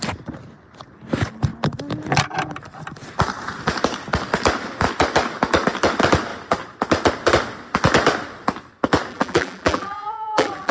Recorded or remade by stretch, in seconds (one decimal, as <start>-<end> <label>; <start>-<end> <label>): 0.0-9.1 recorded; 9.1-10.7 remade